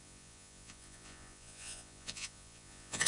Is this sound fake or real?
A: fake